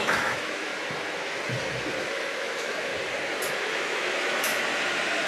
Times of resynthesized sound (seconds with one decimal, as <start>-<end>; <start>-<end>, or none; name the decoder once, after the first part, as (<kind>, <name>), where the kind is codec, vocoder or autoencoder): 0.0-0.7 (autoencoder, DAC-VAE); 2.0-2.9; 3.5-4.5